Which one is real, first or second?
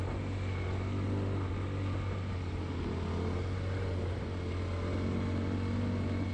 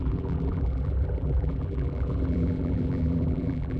first